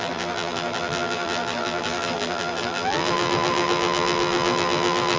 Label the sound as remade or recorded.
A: remade